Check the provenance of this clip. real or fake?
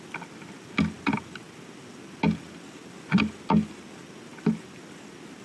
real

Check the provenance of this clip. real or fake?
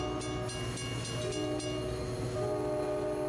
real